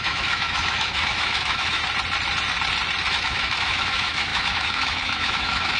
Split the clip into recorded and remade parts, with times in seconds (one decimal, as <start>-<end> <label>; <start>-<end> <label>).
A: 0.0-1.8 remade; 1.8-3.1 recorded; 3.1-5.8 remade